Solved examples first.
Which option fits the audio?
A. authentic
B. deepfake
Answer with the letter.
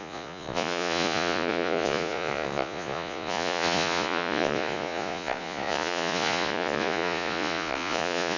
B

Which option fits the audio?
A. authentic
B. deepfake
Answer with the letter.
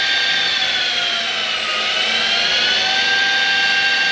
A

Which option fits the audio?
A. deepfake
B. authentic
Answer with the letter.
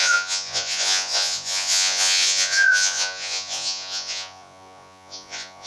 A